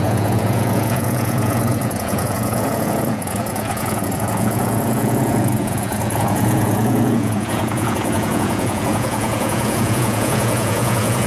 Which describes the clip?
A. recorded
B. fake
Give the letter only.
B